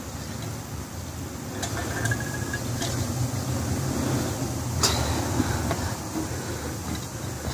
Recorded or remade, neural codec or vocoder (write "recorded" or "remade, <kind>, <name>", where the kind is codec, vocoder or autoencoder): recorded